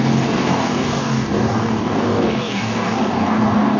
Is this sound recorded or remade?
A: remade